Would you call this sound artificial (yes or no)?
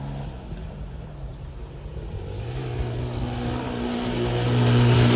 no